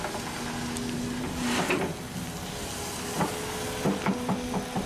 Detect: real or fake real